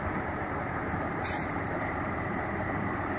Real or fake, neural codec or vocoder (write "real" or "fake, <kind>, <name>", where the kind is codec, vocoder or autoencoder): fake, vocoder, BigVGAN v2